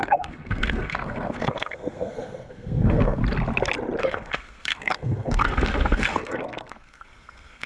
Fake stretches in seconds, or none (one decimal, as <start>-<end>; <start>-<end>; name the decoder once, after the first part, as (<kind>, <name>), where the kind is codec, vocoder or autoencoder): 0.0-3.2 (codec, SNAC); 4.0-7.7